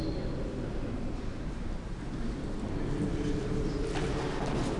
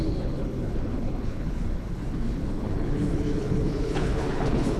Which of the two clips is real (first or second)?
first